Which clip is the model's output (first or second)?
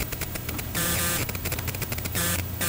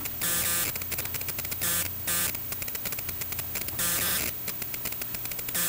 first